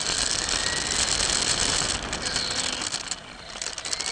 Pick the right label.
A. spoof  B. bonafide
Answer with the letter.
B